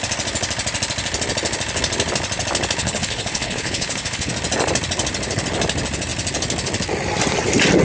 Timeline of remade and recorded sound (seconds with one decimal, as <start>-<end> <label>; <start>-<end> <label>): 0.0-2.8 recorded; 2.8-4.3 remade; 4.3-7.8 recorded